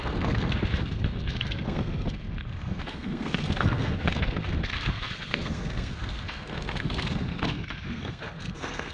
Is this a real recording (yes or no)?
no